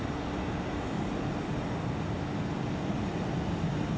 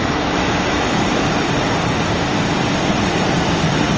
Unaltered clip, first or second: first